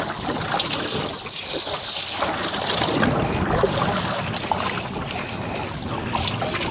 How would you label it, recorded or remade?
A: recorded